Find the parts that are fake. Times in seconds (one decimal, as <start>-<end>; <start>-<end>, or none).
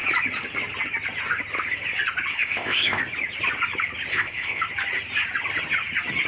2.3-3.0; 4.1-4.6